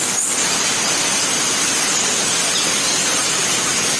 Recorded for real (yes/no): yes